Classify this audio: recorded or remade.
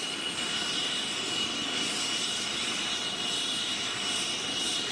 recorded